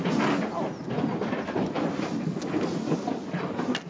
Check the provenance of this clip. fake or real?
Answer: real